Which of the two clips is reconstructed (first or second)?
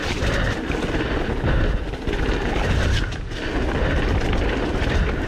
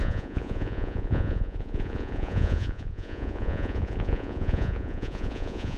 second